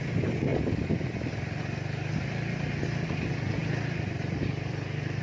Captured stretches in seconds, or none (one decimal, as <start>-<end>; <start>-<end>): 0.0-5.2